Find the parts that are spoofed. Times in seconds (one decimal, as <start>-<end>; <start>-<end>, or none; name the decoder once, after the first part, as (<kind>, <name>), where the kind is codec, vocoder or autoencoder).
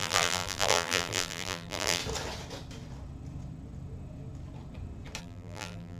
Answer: 0.0-2.0 (vocoder, BigVGAN v2); 5.2-6.0